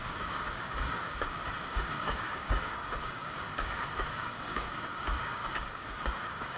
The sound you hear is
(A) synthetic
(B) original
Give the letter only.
A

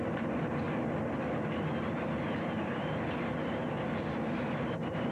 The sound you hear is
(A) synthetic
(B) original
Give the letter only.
B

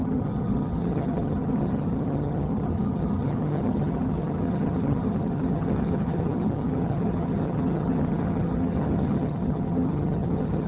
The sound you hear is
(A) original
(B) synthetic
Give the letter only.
B